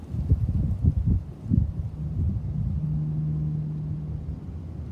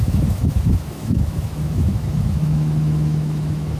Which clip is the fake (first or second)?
second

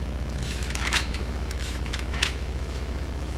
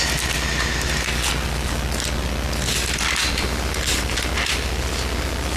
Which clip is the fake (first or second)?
first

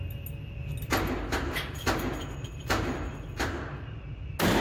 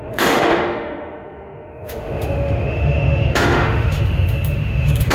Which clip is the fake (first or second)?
second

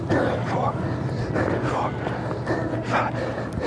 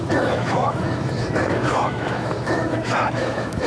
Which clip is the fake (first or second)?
second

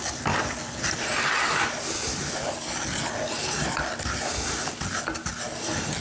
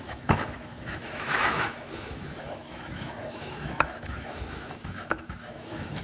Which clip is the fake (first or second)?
second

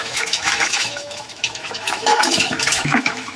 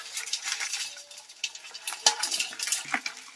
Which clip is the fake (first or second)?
first